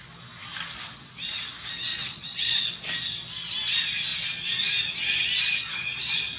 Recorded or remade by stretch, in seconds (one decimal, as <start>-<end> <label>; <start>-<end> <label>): 0.0-1.9 recorded; 1.9-2.7 remade; 2.7-6.4 recorded